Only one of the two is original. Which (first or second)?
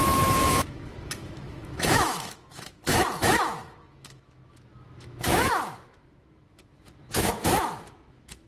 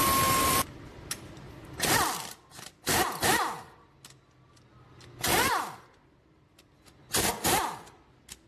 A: second